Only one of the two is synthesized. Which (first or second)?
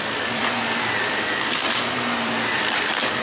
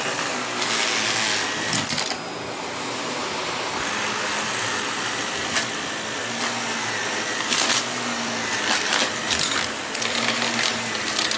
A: first